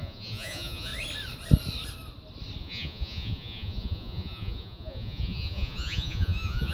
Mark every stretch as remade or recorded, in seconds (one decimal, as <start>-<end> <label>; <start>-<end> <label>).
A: 0.0-0.9 remade; 0.9-2.6 recorded; 2.6-6.7 remade